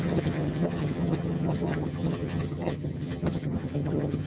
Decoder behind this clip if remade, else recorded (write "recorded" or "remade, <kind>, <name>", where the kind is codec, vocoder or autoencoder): remade, vocoder, HiFi-GAN